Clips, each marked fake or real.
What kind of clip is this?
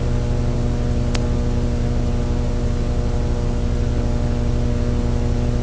real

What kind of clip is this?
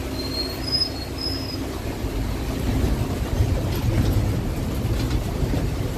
real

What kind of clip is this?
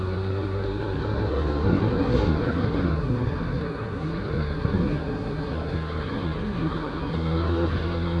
fake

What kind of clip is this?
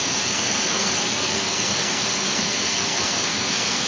fake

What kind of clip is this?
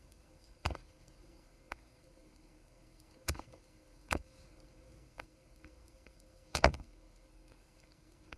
fake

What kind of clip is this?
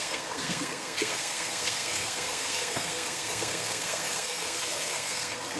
fake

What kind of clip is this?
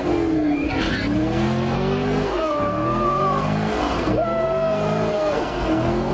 fake